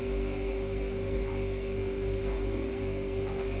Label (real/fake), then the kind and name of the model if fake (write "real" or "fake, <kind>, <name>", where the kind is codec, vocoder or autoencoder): fake, codec, SNAC